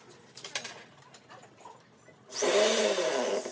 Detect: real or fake real